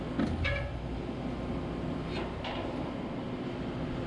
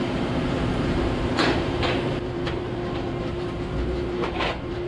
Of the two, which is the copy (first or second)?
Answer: second